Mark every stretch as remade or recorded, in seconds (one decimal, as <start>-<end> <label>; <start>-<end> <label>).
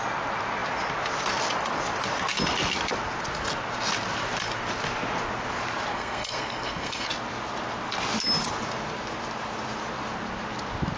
0.0-5.9 recorded; 5.9-7.1 remade; 7.1-11.0 recorded